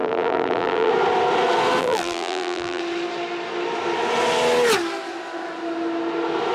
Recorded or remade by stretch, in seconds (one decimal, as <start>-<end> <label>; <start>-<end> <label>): 0.0-0.9 remade; 0.9-1.8 recorded; 1.8-2.8 remade; 2.8-6.5 recorded